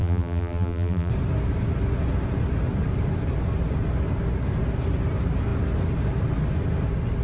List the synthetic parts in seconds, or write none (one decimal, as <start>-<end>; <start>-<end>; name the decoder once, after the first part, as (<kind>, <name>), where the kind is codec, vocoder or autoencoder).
0.0-1.1 (vocoder, BigVGAN v2)